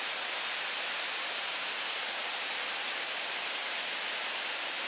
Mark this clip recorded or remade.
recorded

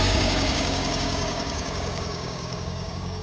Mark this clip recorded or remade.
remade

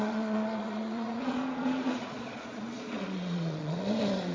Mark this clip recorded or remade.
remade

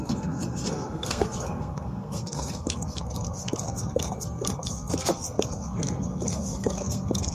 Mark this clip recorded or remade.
remade